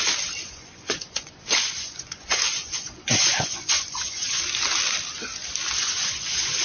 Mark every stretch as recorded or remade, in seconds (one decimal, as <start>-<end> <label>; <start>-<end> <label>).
0.0-0.4 recorded; 0.4-4.4 remade; 4.4-5.8 recorded; 5.8-6.6 remade